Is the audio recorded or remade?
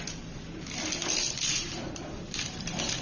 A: recorded